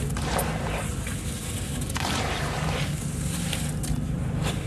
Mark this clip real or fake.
real